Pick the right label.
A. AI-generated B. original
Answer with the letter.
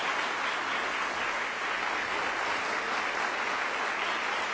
B